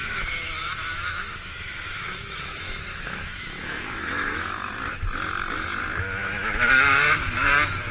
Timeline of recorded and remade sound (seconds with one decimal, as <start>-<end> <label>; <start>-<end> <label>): 0.0-4.7 remade; 4.7-6.2 recorded; 6.2-7.5 remade; 7.5-7.9 recorded